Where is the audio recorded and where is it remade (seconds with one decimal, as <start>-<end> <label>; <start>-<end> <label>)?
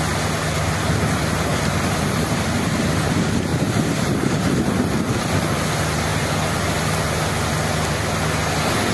0.0-1.5 recorded; 1.5-2.5 remade; 2.5-3.5 recorded; 3.5-5.0 remade; 5.0-8.9 recorded